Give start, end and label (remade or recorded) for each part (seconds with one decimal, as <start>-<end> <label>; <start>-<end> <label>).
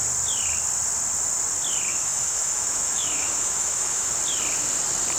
0.0-1.9 recorded; 1.9-4.1 remade; 4.1-5.2 recorded